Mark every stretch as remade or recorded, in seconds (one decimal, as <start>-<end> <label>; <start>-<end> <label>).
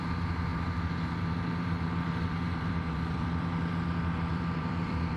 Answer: 0.0-0.5 recorded; 0.5-3.6 remade; 3.6-4.3 recorded; 4.3-5.2 remade